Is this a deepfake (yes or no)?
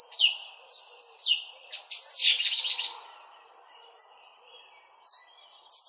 no